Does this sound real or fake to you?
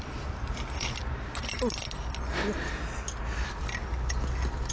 real